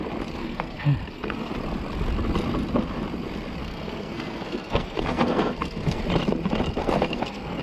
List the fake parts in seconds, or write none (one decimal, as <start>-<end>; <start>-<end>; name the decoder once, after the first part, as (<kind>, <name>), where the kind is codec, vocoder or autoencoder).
0.4-1.5 (codec, SNAC); 3.6-6.0; 6.8-7.6

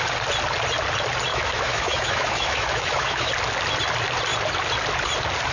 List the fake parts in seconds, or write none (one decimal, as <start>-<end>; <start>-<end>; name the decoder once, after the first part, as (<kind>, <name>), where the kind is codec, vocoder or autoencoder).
1.3-3.3 (autoencoder, DAC-VAE)

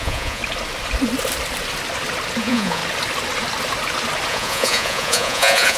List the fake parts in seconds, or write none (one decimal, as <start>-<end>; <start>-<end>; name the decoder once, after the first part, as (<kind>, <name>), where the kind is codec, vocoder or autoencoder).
0.0-0.4 (vocoder, Vocos); 2.4-2.8; 4.3-5.8

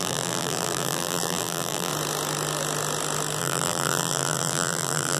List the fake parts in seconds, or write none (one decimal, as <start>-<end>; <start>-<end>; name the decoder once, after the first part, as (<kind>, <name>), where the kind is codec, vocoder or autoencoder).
0.0-1.9 (vocoder, BigVGAN v2); 3.4-5.2

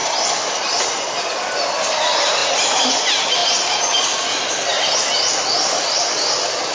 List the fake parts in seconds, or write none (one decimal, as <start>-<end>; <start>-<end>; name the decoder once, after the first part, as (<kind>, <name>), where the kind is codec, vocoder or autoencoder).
none